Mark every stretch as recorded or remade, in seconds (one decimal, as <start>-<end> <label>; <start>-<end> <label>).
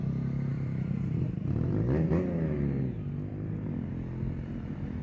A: 0.0-0.5 recorded; 0.5-2.1 remade; 2.1-3.3 recorded; 3.3-3.9 remade; 3.9-5.0 recorded